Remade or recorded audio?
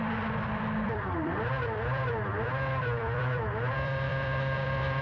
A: remade